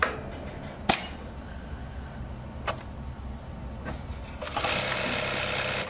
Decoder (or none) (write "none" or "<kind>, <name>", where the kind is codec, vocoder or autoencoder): none